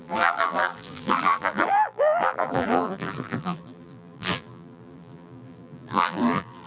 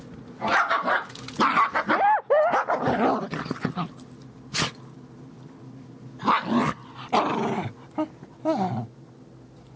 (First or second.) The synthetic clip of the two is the first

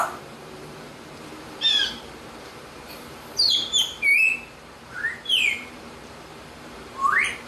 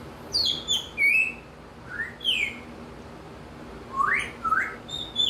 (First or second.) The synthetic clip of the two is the first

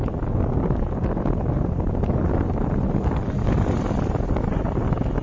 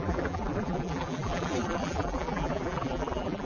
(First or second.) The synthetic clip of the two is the second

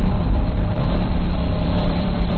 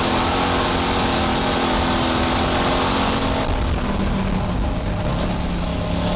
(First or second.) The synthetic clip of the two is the first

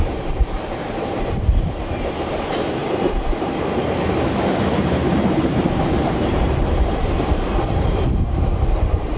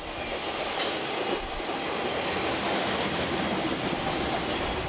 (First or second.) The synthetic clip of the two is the first